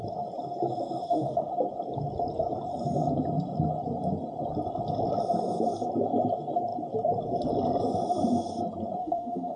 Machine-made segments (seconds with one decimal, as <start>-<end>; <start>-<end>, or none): 1.0-1.5; 9.0-9.6